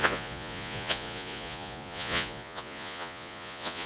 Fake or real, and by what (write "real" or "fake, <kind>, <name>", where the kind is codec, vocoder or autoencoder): fake, vocoder, Vocos